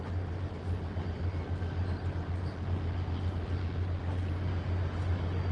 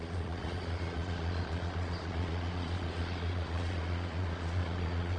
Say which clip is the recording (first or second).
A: first